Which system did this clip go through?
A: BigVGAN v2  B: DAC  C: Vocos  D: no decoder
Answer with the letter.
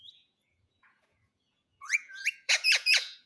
C